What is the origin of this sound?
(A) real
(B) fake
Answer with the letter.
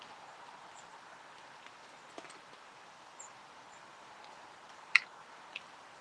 B